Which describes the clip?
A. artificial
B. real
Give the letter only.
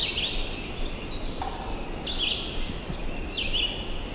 B